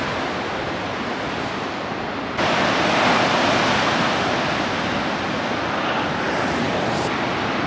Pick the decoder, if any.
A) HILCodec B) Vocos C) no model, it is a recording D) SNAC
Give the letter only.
C